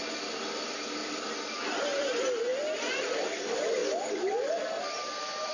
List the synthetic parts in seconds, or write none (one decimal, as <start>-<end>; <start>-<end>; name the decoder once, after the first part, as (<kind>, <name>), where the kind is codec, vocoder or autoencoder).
none